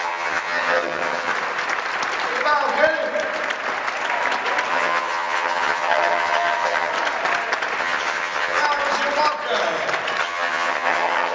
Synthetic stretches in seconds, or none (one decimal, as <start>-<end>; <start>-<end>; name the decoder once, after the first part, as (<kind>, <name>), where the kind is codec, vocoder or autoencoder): 0.0-1.3 (vocoder, HiFi-GAN); 4.7-6.9; 7.8-8.6; 10.2-11.3